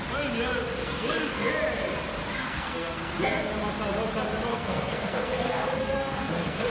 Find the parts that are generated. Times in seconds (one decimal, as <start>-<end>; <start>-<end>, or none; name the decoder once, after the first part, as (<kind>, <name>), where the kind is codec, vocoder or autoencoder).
0.8-1.5 (codec, SNAC); 2.4-3.5; 4.5-6.7